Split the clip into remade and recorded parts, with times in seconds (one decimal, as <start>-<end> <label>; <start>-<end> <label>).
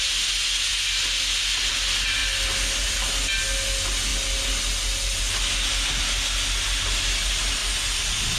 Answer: 0.0-8.4 recorded